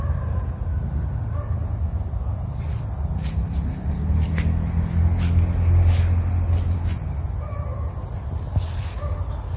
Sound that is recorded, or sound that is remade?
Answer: recorded